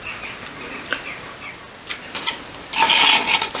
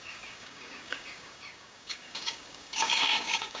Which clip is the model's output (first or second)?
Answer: second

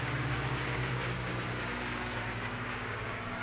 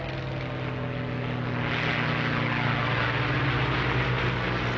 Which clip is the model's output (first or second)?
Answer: first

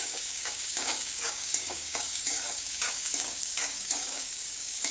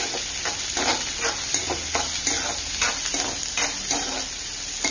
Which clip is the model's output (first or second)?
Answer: first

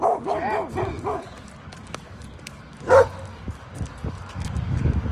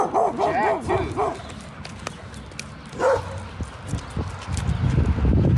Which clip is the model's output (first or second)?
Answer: first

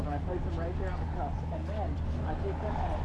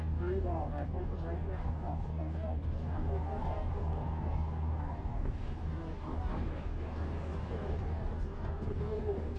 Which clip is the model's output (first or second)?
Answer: second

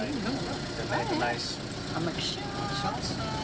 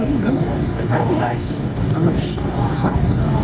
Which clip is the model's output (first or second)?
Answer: second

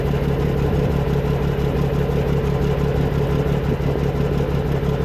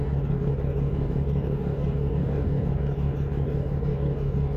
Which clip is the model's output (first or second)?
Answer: second